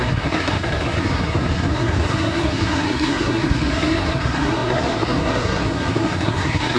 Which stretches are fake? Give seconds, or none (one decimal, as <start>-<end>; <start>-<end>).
0.0-6.8